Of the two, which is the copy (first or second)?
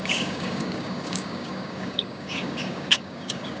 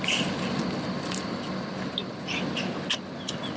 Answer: first